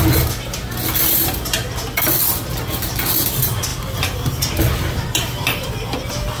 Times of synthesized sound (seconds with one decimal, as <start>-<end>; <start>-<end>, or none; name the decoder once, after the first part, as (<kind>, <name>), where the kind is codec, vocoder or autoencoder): none